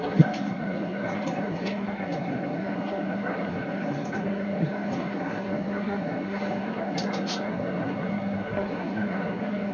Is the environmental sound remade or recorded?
remade